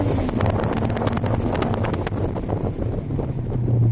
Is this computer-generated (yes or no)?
no